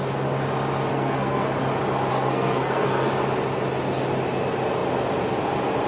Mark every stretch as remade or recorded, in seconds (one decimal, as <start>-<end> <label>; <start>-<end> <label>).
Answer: 0.0-0.9 recorded; 0.9-1.6 remade; 1.6-2.1 recorded; 2.1-3.1 remade; 3.1-5.9 recorded